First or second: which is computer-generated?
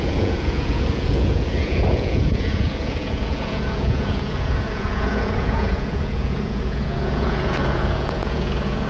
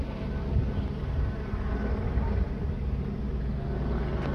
first